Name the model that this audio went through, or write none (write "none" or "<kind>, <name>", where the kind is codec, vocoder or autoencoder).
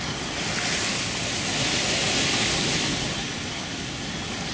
none